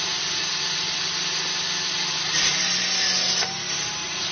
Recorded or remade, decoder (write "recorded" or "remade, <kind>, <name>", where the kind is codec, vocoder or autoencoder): recorded